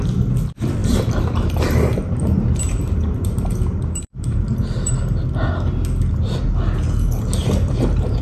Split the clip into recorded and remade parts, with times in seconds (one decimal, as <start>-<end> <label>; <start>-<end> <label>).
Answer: 0.0-0.8 recorded; 0.8-4.9 remade; 4.9-7.4 recorded; 7.4-8.2 remade